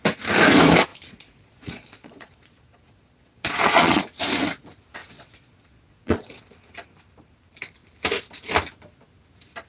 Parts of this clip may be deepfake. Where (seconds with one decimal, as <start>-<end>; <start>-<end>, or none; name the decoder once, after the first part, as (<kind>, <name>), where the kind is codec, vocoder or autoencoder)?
0.9-4.0 (vocoder, Vocos); 5.0-6.4